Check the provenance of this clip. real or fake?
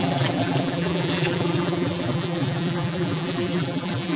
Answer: fake